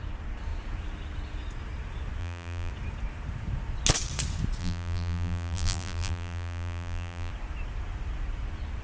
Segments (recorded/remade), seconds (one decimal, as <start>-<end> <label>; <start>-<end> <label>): 0.0-2.2 recorded; 2.2-2.7 remade; 2.7-4.6 recorded; 4.6-7.3 remade; 7.3-8.8 recorded